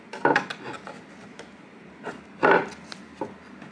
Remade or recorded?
recorded